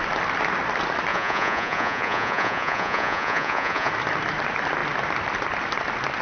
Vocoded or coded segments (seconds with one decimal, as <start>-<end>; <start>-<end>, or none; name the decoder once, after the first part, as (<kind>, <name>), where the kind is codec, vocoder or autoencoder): 1.1-3.9 (vocoder, Vocos)